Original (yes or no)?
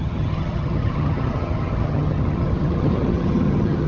no